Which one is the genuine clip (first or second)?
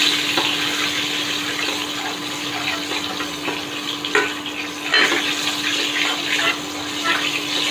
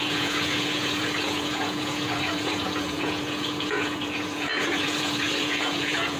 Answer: first